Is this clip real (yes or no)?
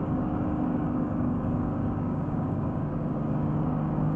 no